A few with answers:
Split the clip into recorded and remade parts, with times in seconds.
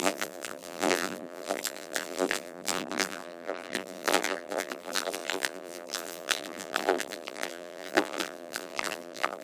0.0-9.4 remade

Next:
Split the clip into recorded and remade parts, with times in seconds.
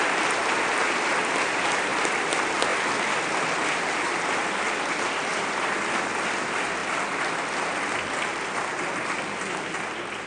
0.0-0.4 recorded; 0.4-1.2 remade; 1.2-10.3 recorded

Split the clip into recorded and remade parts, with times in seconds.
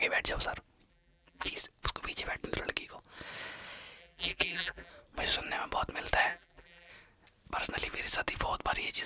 0.0-0.9 recorded; 0.9-1.5 remade; 1.5-4.0 recorded; 4.0-4.9 remade; 4.9-6.3 recorded; 6.3-6.9 remade; 6.9-9.1 recorded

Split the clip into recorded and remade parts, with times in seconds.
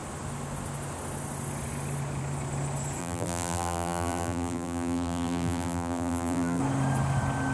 0.0-3.0 recorded; 3.0-6.6 remade; 6.6-7.5 recorded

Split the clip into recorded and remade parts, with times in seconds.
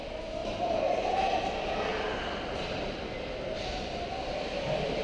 0.0-0.4 recorded; 0.4-1.4 remade; 1.4-5.0 recorded